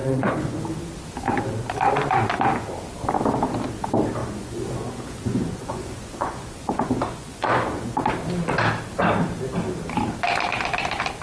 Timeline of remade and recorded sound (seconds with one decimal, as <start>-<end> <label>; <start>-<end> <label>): 0.0-0.6 remade; 0.6-4.2 recorded; 4.2-8.0 remade; 8.0-11.2 recorded